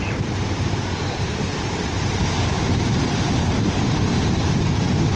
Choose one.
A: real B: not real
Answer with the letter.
B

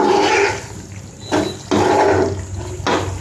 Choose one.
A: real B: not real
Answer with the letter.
A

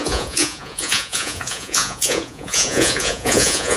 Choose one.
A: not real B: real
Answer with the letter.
A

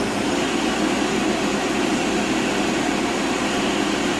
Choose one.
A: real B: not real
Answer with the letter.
A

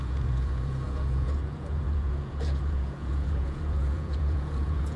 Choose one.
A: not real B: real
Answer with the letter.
A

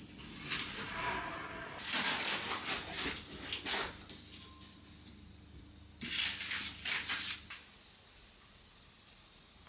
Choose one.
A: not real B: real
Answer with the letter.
B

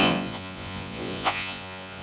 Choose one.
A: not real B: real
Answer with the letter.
A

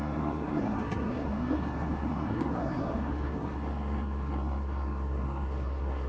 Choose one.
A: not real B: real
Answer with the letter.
A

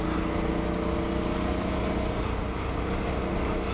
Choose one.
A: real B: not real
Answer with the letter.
A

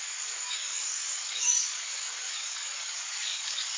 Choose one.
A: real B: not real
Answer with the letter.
B